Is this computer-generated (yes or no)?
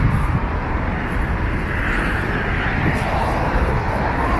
no